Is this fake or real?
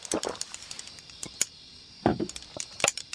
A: real